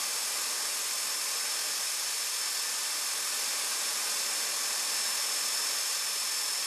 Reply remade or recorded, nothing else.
recorded